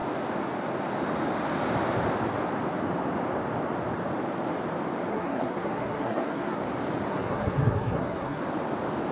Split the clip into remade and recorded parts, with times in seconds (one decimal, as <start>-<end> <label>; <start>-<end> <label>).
0.0-5.1 recorded; 5.1-6.6 remade; 6.6-7.1 recorded; 7.1-8.4 remade; 8.4-9.1 recorded